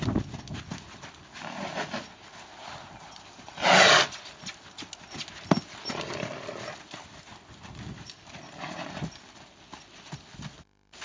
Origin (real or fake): real